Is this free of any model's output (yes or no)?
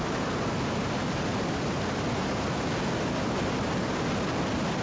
yes